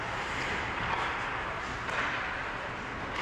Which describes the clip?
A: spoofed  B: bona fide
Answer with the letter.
B